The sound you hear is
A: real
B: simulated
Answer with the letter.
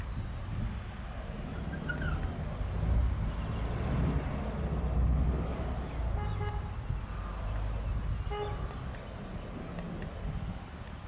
A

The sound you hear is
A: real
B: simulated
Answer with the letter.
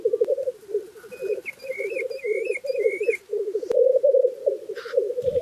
A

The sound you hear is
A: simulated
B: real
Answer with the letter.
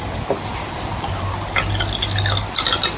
B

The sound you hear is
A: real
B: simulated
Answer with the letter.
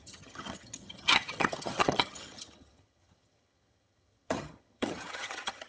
B